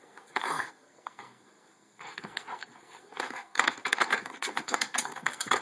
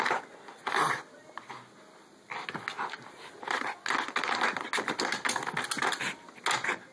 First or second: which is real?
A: second